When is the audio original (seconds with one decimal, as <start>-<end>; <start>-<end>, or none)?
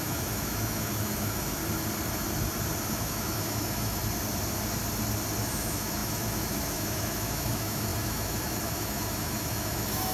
1.6-2.9; 4.0-5.4